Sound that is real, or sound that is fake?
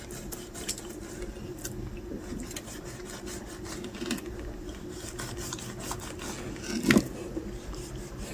real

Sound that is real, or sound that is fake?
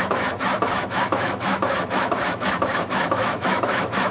fake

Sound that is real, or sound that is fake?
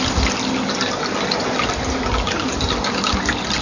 real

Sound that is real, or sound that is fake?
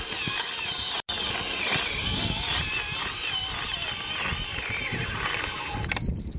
real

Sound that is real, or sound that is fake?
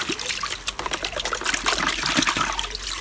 real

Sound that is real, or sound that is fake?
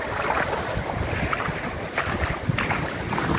fake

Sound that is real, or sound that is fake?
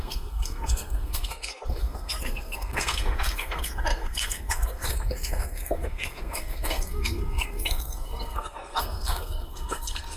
fake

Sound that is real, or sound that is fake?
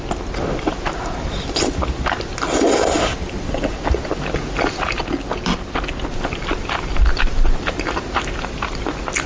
real